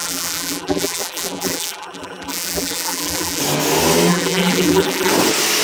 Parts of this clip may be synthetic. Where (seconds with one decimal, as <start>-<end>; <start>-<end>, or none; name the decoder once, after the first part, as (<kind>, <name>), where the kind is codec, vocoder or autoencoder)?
0.0-3.4 (vocoder, BigVGAN v2); 4.1-5.1